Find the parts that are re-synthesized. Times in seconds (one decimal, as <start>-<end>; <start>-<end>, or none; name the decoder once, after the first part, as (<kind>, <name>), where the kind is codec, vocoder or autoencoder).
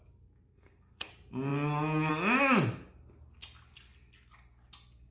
0.5-1.1 (codec, SNAC)